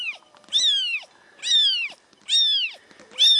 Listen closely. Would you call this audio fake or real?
real